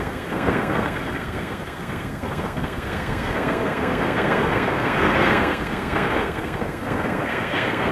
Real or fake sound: fake